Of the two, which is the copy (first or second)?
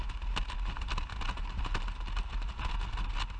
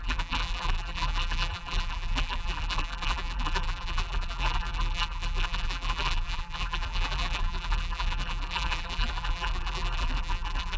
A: second